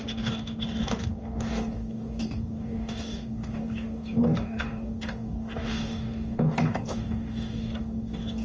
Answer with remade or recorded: remade